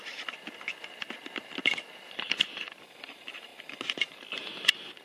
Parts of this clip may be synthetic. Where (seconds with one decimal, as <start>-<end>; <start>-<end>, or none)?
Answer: 0.0-3.5

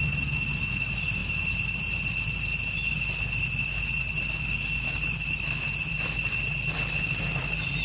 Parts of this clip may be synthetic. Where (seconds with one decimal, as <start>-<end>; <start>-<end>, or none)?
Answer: none

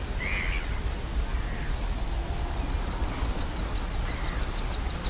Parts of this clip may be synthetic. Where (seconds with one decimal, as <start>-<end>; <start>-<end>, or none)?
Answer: none

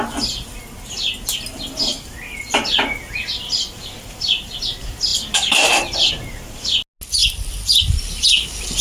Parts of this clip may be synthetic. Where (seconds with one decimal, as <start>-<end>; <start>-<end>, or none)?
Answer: 5.1-6.1; 7.2-8.0

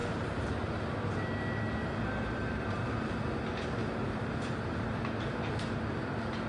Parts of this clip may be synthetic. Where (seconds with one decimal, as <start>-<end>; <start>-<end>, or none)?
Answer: 0.0-0.5; 1.8-3.1; 3.8-5.0

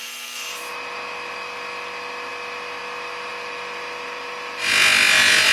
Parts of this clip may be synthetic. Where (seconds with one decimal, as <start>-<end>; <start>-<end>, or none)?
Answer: 0.0-0.7; 3.3-4.7

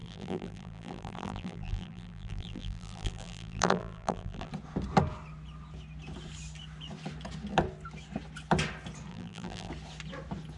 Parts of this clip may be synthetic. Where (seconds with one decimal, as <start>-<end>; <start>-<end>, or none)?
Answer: 0.0-4.5; 9.1-9.7